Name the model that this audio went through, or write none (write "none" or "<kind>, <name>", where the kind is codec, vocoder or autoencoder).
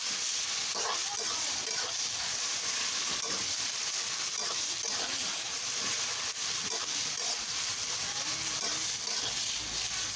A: none